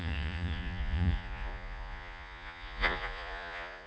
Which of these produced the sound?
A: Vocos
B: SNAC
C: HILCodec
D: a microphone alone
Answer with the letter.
A